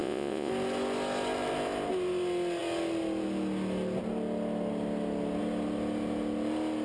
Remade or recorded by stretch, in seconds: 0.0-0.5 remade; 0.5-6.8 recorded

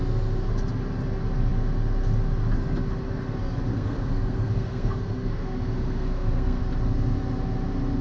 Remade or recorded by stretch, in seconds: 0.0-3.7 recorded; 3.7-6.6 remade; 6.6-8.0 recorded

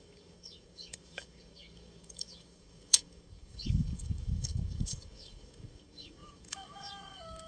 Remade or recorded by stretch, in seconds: 0.0-7.5 remade

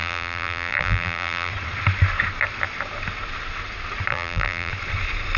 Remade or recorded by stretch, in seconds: 0.0-1.5 remade; 1.5-4.1 recorded; 4.1-4.7 remade; 4.7-5.4 recorded